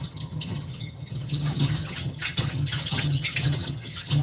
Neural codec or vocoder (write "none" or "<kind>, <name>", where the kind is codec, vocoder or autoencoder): vocoder, HiFi-GAN